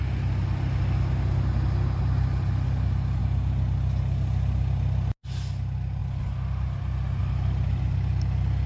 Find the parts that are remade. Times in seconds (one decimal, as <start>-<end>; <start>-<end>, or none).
none